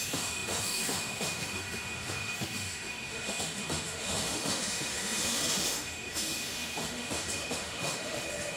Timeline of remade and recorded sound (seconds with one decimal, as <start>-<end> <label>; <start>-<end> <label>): 0.0-8.6 remade

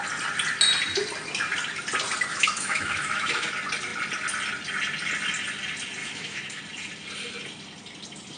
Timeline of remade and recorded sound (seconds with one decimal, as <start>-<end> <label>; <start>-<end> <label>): 0.0-2.3 recorded; 2.3-3.5 remade; 3.5-6.0 recorded; 6.0-6.6 remade; 6.6-8.4 recorded

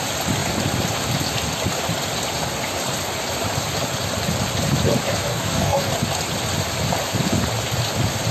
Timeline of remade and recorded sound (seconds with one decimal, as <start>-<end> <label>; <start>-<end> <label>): 0.0-5.3 recorded; 5.3-5.9 remade; 5.9-8.3 recorded

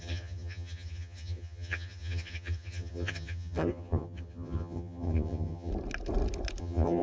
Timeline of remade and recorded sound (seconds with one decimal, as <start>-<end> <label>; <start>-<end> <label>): 0.0-5.7 remade; 5.7-6.6 recorded; 6.6-7.0 remade

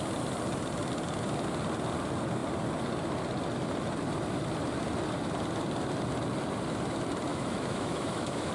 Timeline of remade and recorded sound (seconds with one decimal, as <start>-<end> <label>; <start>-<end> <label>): 0.0-7.3 recorded; 7.3-8.5 remade

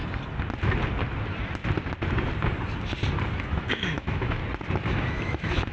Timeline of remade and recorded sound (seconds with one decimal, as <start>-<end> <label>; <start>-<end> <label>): 0.0-3.4 recorded; 3.4-4.4 remade; 4.4-4.9 recorded; 4.9-5.7 remade

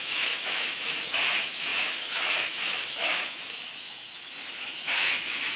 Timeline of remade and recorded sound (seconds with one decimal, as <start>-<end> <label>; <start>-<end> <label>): 0.0-5.6 remade

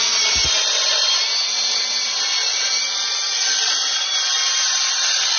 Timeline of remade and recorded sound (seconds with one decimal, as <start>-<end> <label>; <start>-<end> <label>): 0.0-0.4 remade; 0.4-2.2 recorded; 2.2-5.4 remade